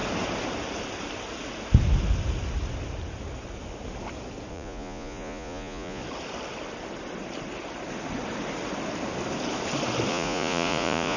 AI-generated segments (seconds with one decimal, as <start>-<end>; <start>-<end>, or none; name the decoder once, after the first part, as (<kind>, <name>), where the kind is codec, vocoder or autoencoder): 4.5-6.0 (vocoder, Vocos); 10.1-11.2